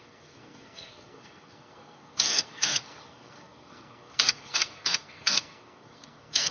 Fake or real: fake